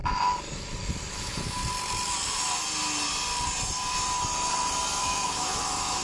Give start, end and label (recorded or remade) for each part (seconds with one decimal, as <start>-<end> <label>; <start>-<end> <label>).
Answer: 0.0-1.1 recorded; 1.1-1.6 remade; 1.6-5.0 recorded; 5.0-6.0 remade